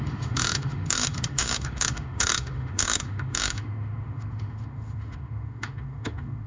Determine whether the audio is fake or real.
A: fake